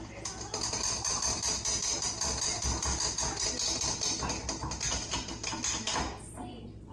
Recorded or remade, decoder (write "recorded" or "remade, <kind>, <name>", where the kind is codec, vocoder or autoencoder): recorded